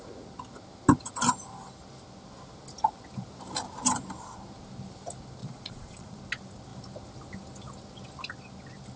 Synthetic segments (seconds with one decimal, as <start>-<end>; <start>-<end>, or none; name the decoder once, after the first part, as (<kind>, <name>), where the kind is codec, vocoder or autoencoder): 5.4-6.2 (vocoder, Vocos)